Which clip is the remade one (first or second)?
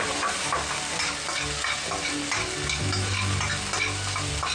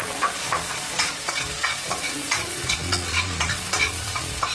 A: second